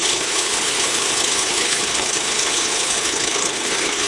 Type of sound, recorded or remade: remade